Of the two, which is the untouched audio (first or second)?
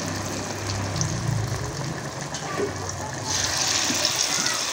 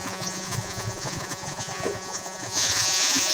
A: first